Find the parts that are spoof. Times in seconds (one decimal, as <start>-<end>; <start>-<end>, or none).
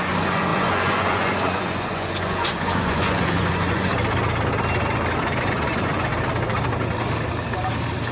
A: 0.0-3.9; 5.4-6.1